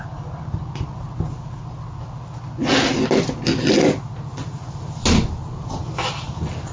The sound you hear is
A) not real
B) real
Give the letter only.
B